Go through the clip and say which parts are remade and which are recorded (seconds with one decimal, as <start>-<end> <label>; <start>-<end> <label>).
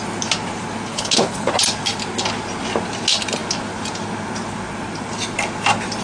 0.0-0.9 recorded; 0.9-1.5 remade; 1.5-6.0 recorded